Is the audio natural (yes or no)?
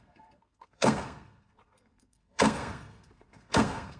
no